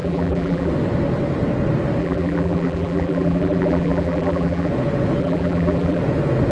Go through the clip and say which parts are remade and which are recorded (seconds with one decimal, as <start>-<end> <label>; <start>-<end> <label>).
0.0-0.7 remade; 0.7-2.0 recorded; 2.0-4.7 remade; 4.7-5.2 recorded; 5.2-6.0 remade; 6.0-6.5 recorded